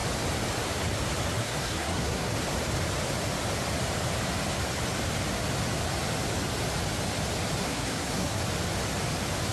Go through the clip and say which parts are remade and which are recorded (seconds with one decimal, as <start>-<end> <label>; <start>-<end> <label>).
0.0-1.4 recorded; 1.4-2.3 remade; 2.3-7.6 recorded; 7.6-8.4 remade; 8.4-9.5 recorded